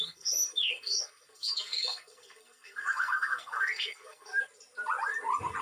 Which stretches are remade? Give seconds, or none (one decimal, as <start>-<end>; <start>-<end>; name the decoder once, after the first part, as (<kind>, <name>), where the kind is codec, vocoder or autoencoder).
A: 0.0-4.3 (codec, SNAC)